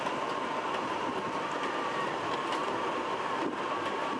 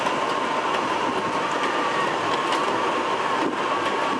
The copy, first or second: first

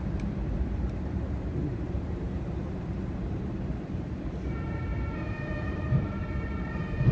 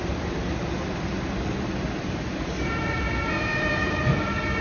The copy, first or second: first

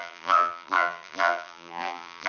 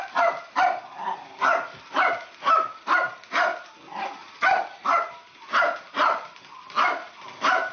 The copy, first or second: first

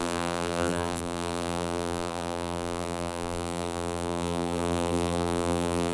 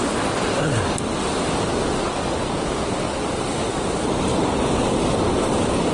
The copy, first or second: first